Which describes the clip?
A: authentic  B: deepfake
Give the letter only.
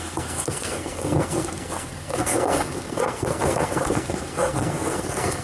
B